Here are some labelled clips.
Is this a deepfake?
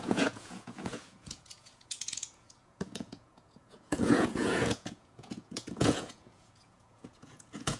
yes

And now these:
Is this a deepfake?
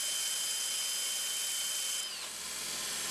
no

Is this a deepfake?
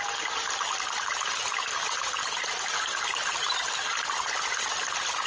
no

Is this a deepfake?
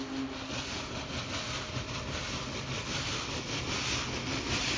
no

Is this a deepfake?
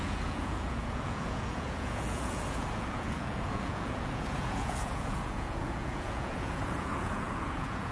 yes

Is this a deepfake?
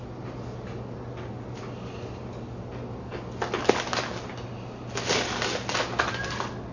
no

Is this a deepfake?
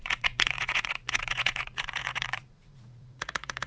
yes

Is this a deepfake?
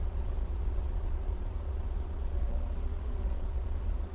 yes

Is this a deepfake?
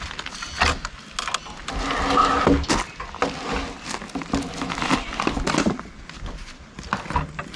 no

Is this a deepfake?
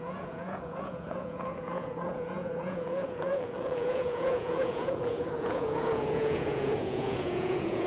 yes